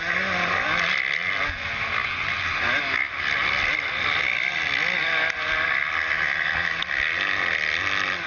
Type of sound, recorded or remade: recorded